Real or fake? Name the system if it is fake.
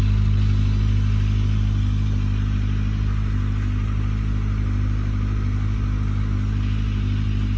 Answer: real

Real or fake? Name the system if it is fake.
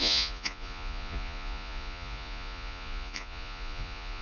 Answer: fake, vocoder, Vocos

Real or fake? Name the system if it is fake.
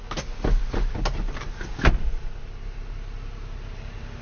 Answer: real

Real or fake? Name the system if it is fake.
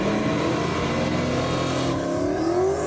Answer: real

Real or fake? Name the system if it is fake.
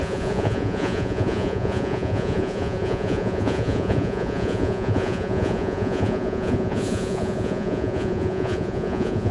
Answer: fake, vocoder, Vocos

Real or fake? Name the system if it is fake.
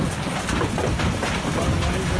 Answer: real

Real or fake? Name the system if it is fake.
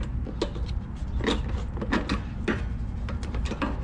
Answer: real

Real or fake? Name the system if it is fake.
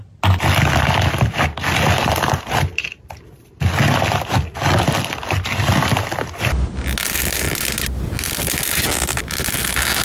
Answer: real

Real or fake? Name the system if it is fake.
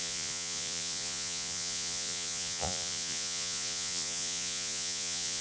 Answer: fake, vocoder, Vocos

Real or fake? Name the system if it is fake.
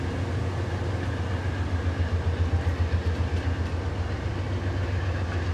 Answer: real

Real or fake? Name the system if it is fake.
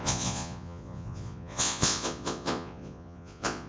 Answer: fake, vocoder, Vocos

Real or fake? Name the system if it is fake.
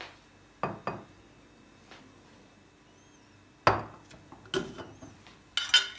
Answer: real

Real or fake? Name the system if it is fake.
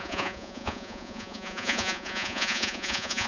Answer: fake, vocoder, Vocos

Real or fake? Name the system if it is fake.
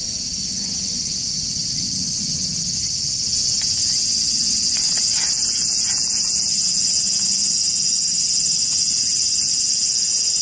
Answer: fake, vocoder, Vocos